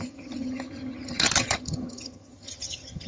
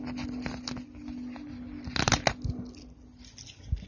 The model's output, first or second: first